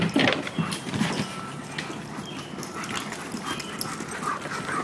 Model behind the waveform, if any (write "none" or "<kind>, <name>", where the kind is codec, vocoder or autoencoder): none